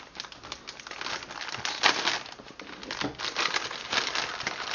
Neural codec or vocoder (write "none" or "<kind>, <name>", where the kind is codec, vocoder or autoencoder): none